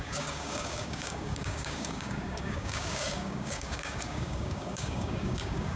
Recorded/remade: remade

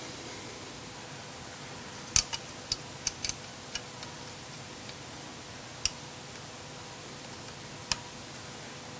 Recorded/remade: recorded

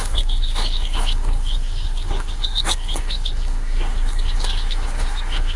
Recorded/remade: remade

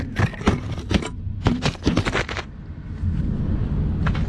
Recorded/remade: recorded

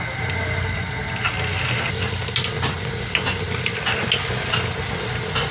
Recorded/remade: recorded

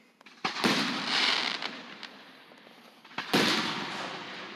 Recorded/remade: recorded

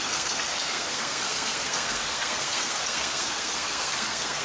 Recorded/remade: remade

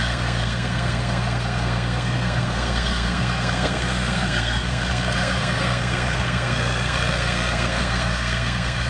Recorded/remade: remade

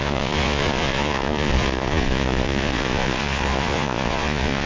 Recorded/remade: remade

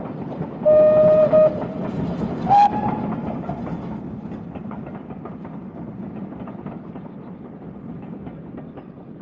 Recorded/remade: recorded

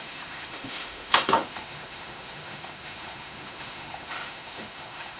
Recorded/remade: remade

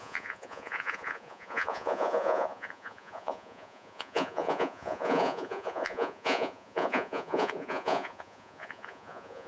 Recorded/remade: remade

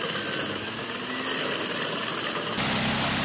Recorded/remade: recorded